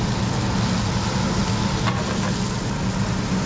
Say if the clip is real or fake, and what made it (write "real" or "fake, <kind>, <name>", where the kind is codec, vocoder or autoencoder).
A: real